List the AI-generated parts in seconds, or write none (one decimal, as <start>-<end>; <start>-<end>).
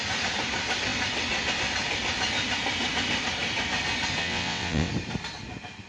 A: 4.2-4.9